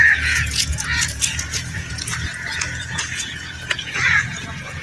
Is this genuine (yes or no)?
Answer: no